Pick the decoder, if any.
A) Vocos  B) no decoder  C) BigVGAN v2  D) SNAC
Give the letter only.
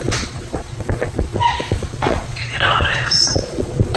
A